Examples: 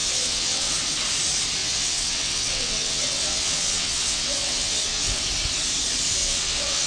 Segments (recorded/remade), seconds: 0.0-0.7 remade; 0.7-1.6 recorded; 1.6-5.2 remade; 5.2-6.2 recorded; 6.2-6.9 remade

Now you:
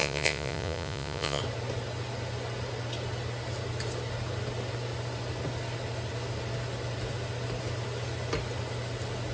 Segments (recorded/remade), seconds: 0.0-1.4 remade; 1.4-9.3 recorded

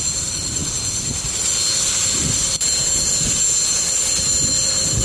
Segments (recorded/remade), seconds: 0.0-5.0 recorded

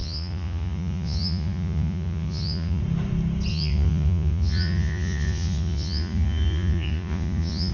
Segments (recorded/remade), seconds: 0.0-2.8 remade; 2.8-3.5 recorded; 3.5-7.7 remade

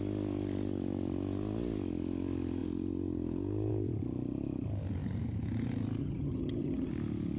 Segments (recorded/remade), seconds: 0.0-6.0 recorded; 6.0-6.9 remade; 6.9-7.4 recorded

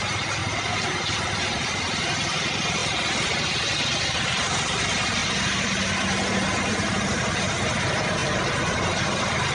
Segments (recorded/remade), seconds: 0.0-9.5 recorded